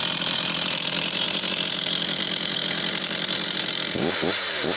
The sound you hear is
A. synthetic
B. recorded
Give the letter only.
A